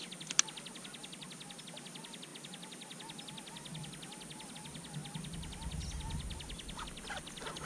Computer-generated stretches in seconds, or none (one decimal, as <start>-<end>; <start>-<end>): 1.0-1.6